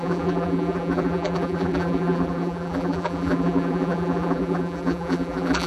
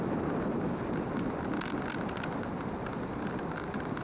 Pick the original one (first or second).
second